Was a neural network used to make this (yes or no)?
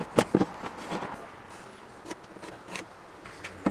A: no